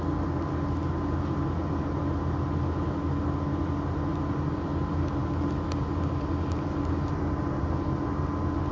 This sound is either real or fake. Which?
real